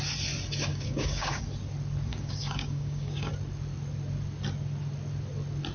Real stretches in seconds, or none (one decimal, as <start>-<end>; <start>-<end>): 0.0-0.7; 1.4-2.1; 3.3-5.7